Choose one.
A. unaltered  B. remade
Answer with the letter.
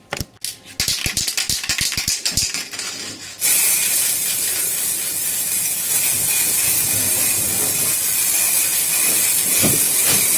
A